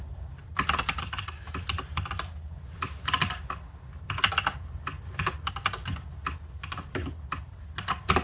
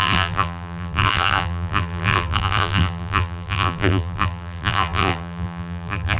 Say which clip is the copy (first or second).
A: second